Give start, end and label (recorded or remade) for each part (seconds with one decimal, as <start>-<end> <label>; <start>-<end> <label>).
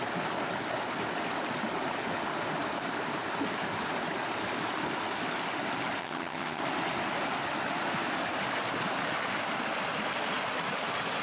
0.0-6.0 recorded; 6.0-6.6 remade; 6.6-11.2 recorded